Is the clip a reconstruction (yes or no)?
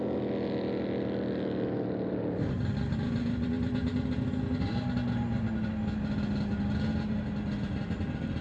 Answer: no